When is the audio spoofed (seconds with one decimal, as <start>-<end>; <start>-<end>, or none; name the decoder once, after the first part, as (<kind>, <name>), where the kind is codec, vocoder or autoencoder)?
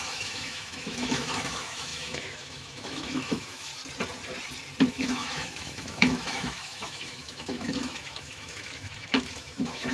0.0-3.7 (autoencoder, DAC-VAE); 4.9-9.9